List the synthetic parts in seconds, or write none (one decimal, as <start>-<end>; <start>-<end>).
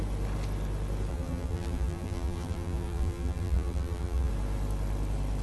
1.1-4.3